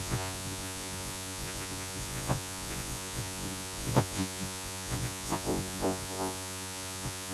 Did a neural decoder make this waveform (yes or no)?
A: yes